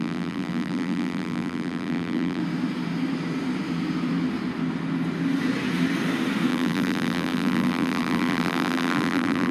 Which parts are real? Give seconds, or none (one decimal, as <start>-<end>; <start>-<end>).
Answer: 2.4-6.5